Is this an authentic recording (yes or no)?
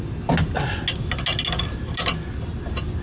yes